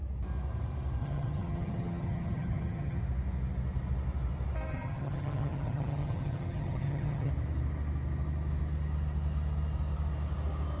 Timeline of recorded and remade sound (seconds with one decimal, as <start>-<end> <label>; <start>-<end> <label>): 0.0-1.0 recorded; 1.0-3.0 remade; 3.0-4.7 recorded; 4.7-7.3 remade; 7.3-10.8 recorded